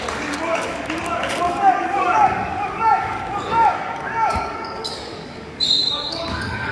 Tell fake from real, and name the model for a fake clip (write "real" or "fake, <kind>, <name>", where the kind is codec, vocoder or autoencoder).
fake, codec, DAC